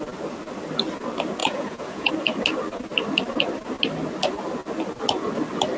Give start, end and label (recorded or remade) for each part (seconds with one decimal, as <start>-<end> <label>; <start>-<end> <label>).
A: 0.0-1.4 recorded; 1.4-2.1 remade; 2.1-5.8 recorded

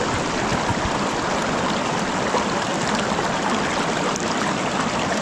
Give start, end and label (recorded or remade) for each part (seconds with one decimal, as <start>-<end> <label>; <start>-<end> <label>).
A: 0.0-0.5 remade; 0.5-1.0 recorded; 1.0-5.2 remade

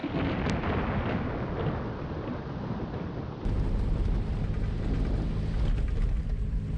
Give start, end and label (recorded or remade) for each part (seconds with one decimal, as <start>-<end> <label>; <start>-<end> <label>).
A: 0.0-6.8 recorded

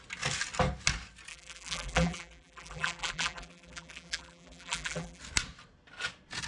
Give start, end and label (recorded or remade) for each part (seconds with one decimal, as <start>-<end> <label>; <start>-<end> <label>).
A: 0.0-1.3 recorded; 1.3-5.2 remade; 5.2-6.5 recorded